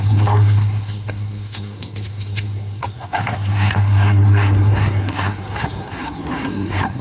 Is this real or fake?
fake